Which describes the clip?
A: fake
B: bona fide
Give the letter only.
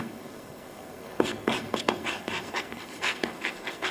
A